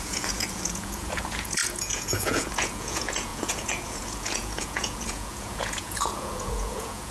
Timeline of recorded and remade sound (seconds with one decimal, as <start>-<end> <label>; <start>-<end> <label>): 0.0-7.1 remade